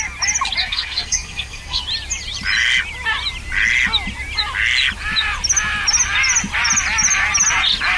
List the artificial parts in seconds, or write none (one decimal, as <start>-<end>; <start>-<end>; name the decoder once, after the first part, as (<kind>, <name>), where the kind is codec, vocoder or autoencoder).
0.6-1.8 (codec, SNAC)